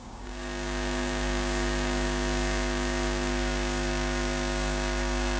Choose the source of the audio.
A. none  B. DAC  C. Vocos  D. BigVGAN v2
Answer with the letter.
B